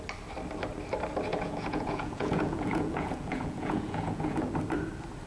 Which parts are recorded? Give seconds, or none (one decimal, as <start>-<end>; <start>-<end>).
0.0-1.3; 4.5-5.3